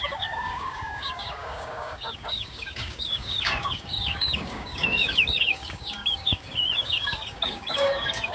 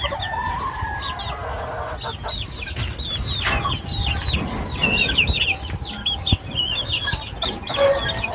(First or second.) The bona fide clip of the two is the second